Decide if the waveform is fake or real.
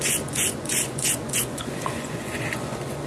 fake